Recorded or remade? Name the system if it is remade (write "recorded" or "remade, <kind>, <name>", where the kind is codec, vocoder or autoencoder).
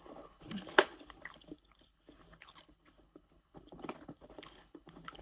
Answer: remade, codec, HILCodec